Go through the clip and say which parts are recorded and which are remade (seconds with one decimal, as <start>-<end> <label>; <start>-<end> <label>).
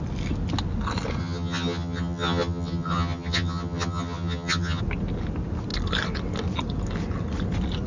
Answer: 0.0-1.2 recorded; 1.2-4.8 remade; 4.8-7.9 recorded